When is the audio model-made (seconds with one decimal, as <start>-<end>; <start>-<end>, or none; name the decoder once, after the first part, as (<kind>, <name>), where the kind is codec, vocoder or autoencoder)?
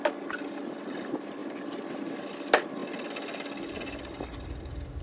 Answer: none